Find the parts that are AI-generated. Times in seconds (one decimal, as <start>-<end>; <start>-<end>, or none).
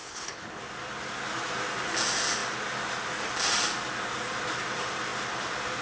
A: 0.0-0.6